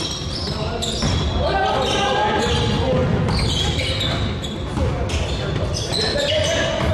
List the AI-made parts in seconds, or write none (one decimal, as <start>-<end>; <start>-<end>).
none